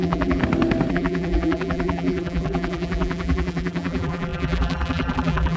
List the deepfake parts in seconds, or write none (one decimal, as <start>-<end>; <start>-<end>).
0.0-0.4; 0.9-5.6